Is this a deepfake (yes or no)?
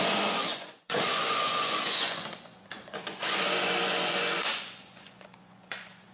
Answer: yes